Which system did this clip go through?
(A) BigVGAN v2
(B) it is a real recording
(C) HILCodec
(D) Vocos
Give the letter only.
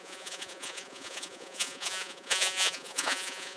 D